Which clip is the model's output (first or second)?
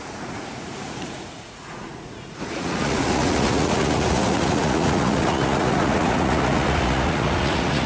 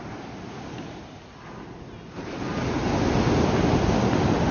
first